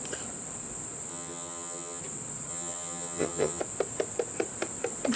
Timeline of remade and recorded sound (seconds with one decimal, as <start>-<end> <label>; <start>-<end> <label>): 0.0-1.1 recorded; 1.1-2.0 remade; 2.0-2.5 recorded; 2.5-3.6 remade; 3.6-5.2 recorded